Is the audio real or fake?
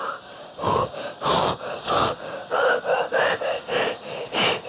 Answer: fake